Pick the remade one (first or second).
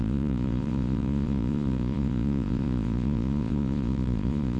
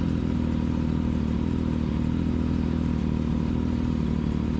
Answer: first